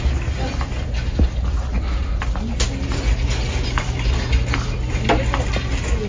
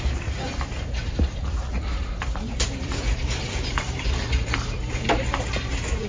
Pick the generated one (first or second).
second